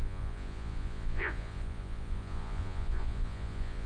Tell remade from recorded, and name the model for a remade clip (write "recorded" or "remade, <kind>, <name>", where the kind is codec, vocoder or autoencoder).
remade, vocoder, Vocos